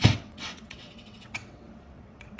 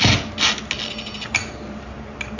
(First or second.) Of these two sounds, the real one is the second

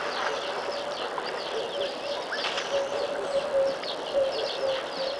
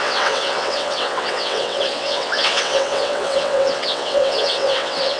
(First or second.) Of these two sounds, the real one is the first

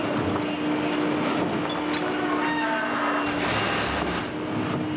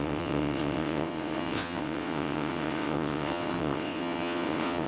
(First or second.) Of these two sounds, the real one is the first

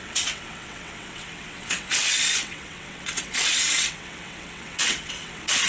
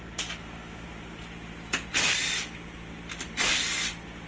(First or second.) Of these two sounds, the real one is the second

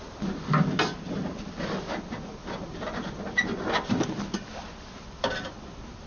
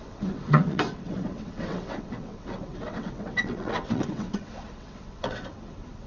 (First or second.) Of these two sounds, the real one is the first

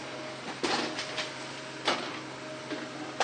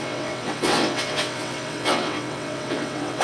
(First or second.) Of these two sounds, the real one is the first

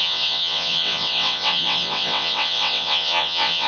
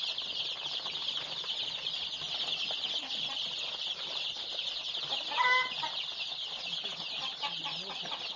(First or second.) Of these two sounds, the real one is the second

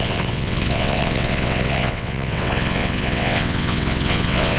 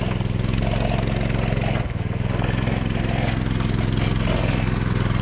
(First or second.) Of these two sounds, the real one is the second